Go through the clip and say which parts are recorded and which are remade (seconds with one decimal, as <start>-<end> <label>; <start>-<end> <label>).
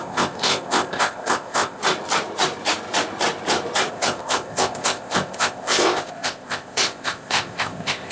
0.0-1.8 remade; 1.8-3.9 recorded; 3.9-8.1 remade